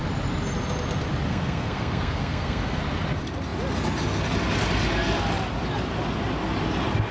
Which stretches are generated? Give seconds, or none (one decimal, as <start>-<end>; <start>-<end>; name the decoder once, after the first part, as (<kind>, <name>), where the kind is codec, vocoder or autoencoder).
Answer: 1.3-2.8 (codec, SNAC)